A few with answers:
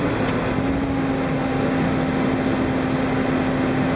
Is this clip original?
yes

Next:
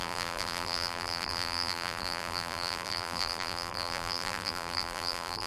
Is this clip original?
no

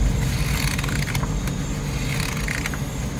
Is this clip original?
yes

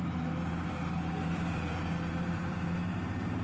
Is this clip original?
no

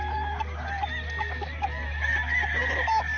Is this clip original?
yes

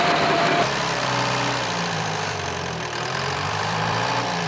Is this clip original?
no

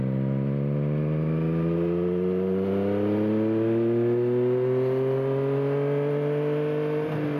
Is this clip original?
yes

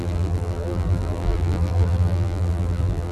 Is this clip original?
no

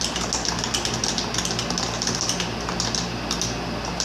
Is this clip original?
yes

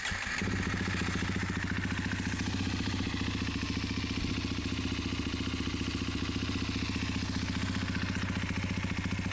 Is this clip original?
yes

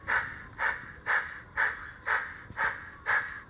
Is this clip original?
yes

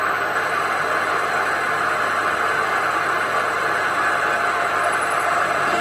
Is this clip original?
yes